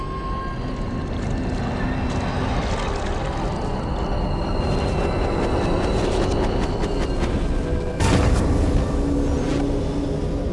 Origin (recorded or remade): recorded